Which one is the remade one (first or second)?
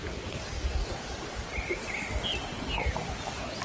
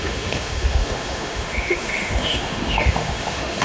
second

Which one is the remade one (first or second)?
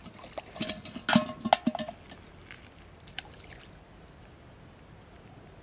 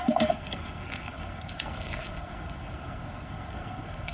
second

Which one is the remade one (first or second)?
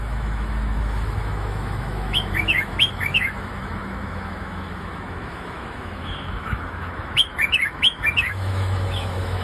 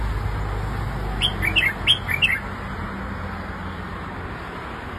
first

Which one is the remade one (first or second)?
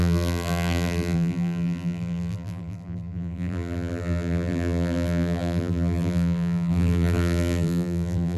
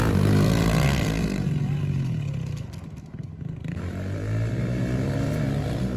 first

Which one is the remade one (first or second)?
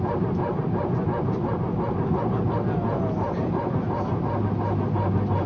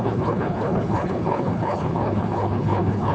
second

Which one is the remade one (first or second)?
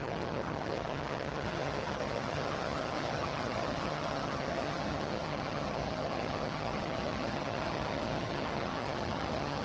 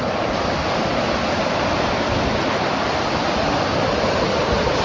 first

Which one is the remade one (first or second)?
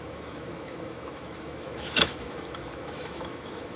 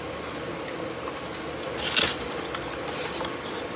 first